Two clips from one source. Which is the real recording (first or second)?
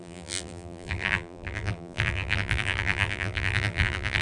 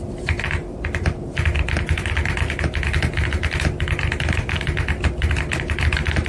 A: second